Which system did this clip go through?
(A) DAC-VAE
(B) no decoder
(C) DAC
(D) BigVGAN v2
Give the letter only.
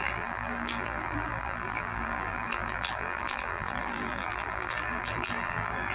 D